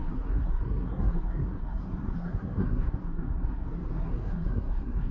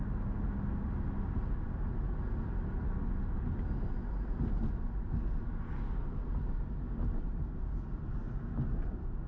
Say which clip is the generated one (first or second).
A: first